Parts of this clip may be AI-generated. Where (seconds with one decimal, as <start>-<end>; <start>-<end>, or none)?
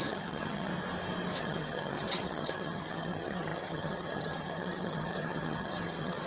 0.0-0.7; 1.4-6.3